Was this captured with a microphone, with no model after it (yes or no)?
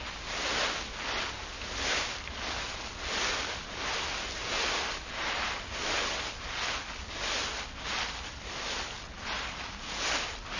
yes